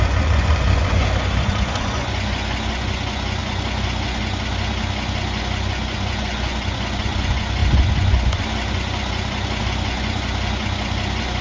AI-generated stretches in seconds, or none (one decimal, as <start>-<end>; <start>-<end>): 0.0-11.4

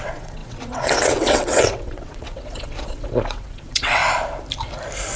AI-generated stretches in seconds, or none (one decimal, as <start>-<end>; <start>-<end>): 0.0-4.0

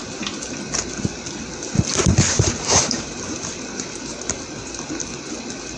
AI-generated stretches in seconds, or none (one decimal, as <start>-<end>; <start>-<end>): 1.9-3.5

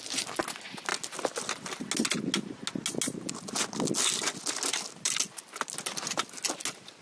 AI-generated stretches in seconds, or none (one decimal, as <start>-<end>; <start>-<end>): none

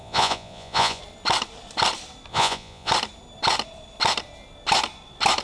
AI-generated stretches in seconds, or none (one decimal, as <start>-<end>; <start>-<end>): 0.0-1.0; 2.3-2.9

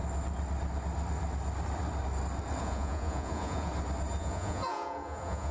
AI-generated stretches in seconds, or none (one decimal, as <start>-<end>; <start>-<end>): 2.6-3.7; 4.2-5.5

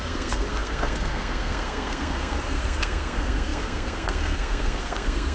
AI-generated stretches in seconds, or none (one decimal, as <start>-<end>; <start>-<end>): 0.0-5.3

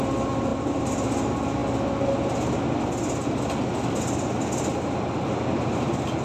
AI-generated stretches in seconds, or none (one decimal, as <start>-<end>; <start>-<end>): 0.5-1.1